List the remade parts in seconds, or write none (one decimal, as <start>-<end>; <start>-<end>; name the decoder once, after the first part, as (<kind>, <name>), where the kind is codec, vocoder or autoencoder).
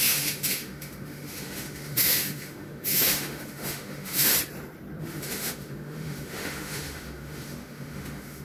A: 0.0-4.3 (autoencoder, DAC-VAE); 5.0-8.4